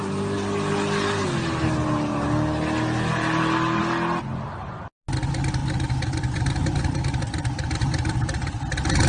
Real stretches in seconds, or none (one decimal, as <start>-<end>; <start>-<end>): 0.0-9.1